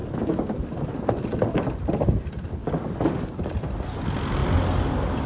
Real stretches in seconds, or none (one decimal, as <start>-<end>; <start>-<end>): 0.9-2.6; 3.3-5.3